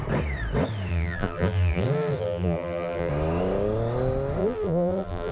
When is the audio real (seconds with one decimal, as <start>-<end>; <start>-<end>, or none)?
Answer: 0.0-0.9; 3.1-4.4